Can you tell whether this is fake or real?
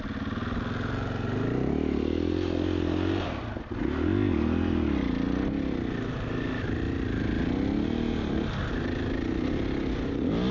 real